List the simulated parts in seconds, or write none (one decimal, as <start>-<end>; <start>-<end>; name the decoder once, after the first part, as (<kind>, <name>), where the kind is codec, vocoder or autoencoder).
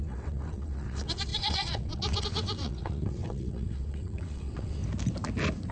0.0-4.8 (vocoder, WaveNeXt)